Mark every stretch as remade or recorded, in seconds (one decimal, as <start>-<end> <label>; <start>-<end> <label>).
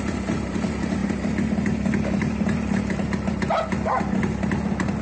0.0-5.0 recorded